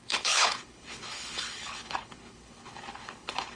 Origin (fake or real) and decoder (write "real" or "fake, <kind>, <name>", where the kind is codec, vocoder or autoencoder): fake, codec, HILCodec